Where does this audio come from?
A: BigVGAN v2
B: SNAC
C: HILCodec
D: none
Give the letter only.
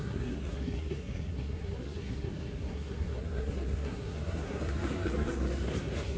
B